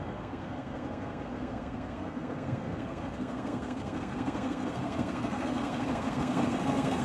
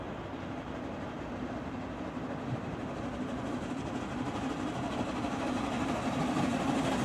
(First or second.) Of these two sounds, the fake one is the first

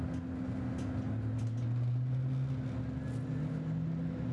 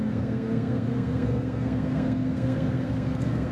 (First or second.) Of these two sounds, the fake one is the second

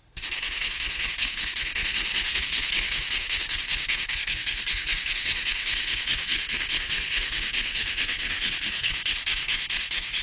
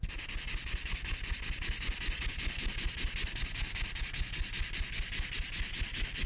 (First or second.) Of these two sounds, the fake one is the first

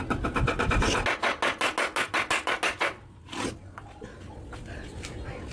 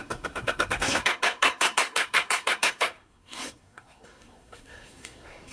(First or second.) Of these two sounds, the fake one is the second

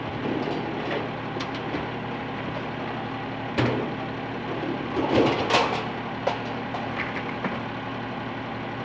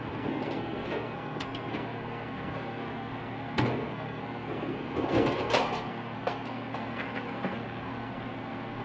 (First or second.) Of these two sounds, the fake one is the second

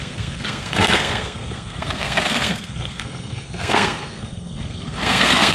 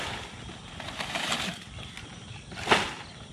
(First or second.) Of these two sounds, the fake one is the first